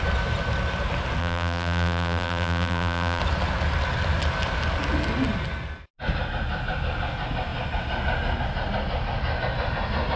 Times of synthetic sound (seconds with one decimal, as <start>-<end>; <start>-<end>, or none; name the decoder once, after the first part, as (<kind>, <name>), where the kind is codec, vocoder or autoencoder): 1.2-3.2 (vocoder, BigVGAN v2)